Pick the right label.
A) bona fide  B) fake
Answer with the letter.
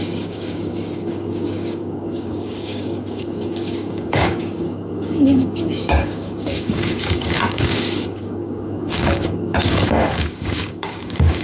B